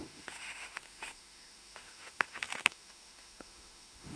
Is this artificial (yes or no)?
yes